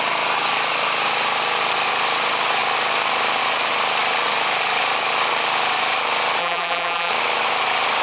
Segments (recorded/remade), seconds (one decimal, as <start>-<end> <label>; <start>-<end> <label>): 0.0-6.4 recorded; 6.4-7.1 remade; 7.1-8.0 recorded